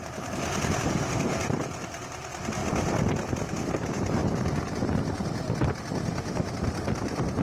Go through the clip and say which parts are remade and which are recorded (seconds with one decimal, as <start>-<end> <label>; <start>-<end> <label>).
0.0-2.6 remade; 2.6-3.7 recorded; 3.7-4.2 remade; 4.2-6.5 recorded; 6.5-7.4 remade